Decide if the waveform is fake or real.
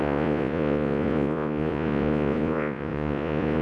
fake